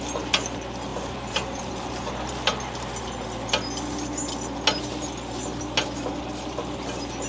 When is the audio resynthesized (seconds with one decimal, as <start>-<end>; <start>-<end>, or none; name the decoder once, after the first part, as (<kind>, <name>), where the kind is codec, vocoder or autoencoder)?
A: 0.9-3.0 (vocoder, BigVGAN v2)